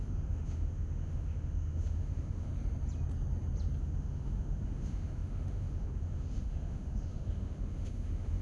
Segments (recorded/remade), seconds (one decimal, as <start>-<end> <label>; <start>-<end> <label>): 0.0-2.5 remade; 2.5-3.8 recorded; 3.8-8.4 remade